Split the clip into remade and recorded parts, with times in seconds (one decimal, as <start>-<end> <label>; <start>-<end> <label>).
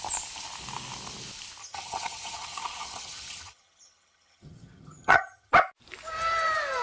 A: 0.0-1.6 recorded; 1.6-5.5 remade; 5.5-6.8 recorded